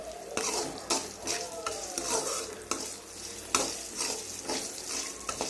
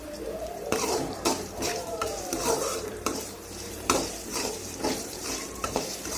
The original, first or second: first